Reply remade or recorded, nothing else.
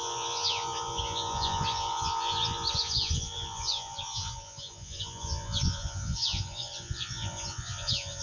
remade